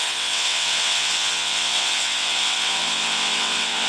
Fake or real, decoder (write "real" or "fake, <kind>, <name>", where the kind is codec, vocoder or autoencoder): fake, vocoder, WaveNeXt